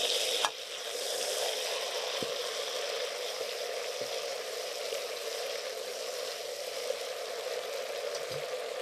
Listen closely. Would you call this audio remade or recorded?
recorded